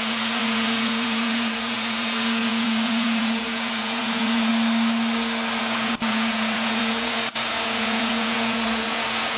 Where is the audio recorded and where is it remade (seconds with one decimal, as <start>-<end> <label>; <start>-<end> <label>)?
0.0-4.5 remade; 4.5-5.6 recorded; 5.6-9.4 remade